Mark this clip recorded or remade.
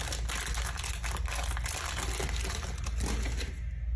recorded